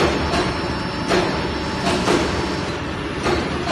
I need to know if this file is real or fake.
real